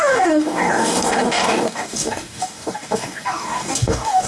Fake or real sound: fake